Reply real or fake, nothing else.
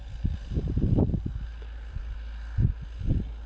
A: real